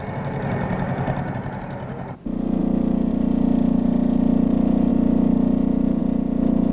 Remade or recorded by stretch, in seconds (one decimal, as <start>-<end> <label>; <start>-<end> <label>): 0.0-6.7 recorded